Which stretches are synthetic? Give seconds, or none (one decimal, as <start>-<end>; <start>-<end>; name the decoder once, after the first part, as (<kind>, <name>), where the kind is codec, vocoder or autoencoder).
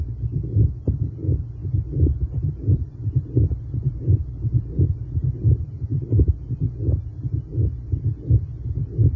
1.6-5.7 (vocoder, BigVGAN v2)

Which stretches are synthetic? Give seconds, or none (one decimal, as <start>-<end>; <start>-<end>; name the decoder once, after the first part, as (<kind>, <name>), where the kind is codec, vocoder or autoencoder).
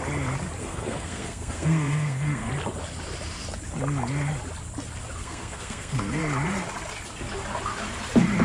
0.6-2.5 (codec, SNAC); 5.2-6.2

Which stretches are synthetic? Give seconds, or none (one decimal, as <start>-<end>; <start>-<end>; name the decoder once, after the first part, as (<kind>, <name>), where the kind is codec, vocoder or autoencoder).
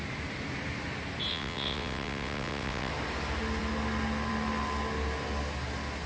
1.3-2.9 (vocoder, WaveNeXt)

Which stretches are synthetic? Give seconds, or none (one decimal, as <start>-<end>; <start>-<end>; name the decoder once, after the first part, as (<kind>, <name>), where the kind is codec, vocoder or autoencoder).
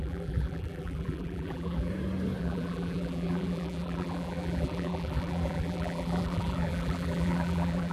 0.0-1.9 (vocoder, BigVGAN v2); 2.4-7.9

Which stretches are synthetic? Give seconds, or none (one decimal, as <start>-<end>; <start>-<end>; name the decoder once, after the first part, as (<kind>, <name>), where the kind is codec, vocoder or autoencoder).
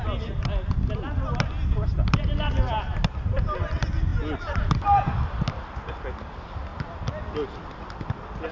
none